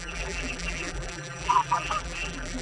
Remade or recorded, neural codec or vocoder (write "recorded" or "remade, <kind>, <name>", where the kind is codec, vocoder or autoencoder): remade, vocoder, BigVGAN v2